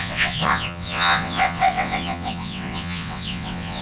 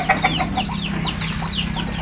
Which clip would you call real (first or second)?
second